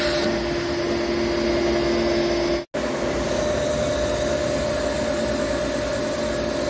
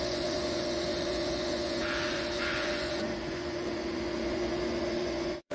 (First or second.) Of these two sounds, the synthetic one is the second